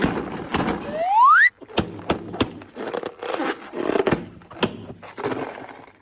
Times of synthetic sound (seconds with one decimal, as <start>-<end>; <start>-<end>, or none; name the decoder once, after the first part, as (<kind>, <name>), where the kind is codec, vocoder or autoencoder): none